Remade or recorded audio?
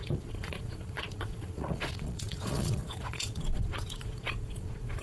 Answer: remade